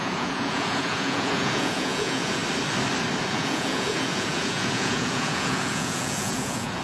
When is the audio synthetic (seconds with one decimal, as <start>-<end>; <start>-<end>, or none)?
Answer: 0.0-2.4; 3.2-6.8